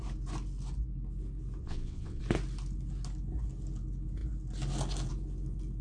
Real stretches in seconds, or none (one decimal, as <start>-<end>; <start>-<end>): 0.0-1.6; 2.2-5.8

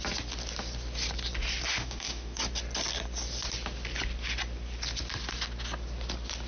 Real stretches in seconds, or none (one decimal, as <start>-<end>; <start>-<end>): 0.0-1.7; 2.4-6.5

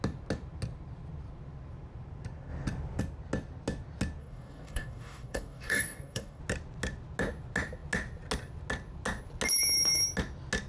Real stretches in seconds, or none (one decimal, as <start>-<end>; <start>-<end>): 0.0-4.2; 6.4-10.7